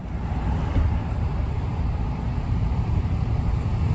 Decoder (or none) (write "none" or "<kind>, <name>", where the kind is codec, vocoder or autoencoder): vocoder, BigVGAN v2